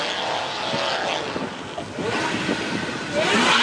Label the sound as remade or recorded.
recorded